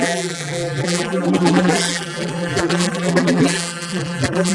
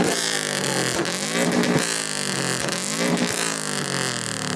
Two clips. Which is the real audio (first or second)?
second